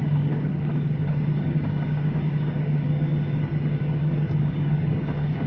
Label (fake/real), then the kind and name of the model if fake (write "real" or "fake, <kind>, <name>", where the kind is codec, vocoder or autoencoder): fake, codec, DAC